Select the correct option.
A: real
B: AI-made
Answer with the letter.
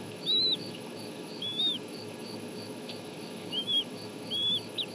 B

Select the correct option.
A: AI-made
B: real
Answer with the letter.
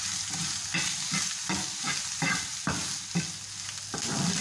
B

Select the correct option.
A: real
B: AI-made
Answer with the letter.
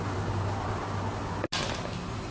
A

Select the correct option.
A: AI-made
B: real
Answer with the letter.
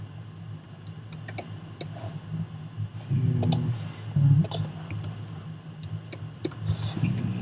B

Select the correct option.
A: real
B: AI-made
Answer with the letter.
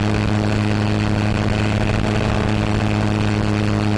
A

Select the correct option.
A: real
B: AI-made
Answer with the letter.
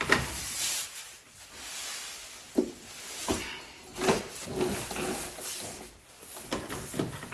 A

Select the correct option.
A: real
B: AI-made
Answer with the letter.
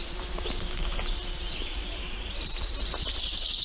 A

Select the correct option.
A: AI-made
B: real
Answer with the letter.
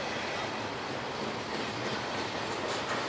B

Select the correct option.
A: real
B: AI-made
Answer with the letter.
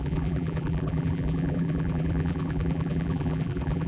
B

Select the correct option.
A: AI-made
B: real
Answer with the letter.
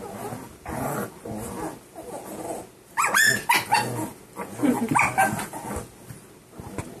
B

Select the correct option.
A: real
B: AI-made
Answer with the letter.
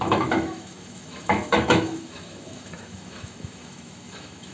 B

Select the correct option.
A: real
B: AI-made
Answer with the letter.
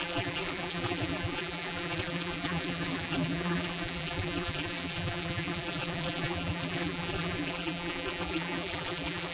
B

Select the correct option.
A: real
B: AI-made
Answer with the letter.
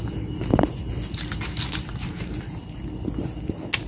A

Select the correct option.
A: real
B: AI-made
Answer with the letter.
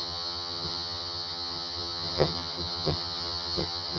B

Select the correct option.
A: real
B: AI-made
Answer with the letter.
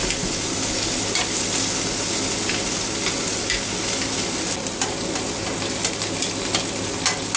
A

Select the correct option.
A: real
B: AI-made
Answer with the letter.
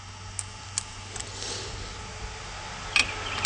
A